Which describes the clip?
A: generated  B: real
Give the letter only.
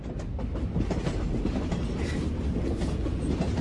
B